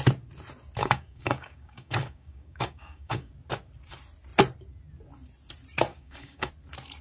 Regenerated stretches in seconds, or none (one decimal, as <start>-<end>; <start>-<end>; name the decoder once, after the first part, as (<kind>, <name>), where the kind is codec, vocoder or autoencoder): 0.8-3.3 (codec, DAC); 5.9-6.5